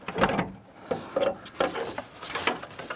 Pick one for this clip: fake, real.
real